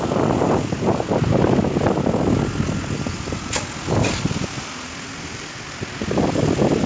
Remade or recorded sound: recorded